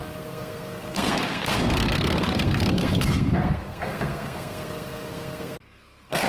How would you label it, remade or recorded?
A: remade